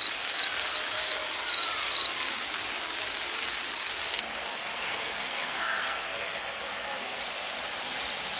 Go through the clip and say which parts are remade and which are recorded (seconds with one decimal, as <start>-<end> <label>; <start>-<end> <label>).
0.0-4.1 recorded; 4.1-7.2 remade; 7.2-8.4 recorded

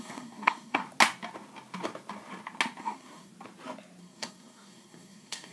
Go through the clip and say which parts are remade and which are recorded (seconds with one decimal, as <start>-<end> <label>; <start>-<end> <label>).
0.0-0.8 remade; 0.8-2.8 recorded; 2.8-3.3 remade; 3.3-4.0 recorded; 4.0-5.5 remade